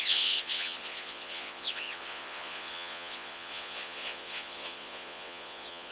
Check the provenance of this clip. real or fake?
fake